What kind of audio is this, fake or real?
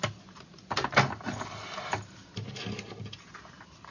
real